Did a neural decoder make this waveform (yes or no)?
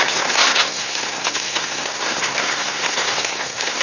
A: yes